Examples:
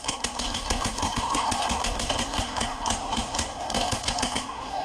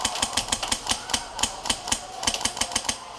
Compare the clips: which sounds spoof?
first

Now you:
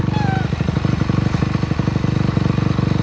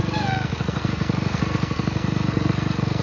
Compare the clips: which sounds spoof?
second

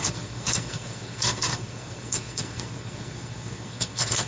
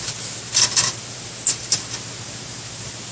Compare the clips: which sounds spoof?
first